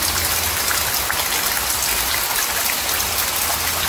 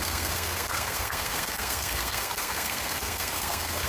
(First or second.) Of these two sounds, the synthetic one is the second